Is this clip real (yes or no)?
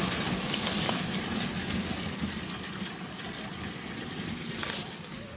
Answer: yes